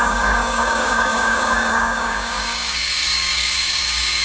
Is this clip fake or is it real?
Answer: fake